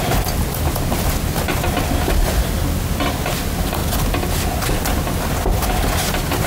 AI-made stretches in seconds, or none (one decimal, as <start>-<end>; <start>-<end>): none